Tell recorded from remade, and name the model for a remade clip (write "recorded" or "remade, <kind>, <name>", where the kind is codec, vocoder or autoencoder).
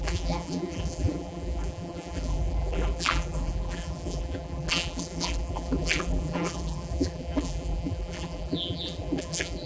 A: remade, vocoder, BigVGAN v2